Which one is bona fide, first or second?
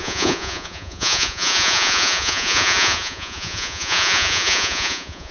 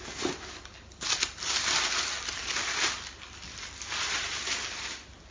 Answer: second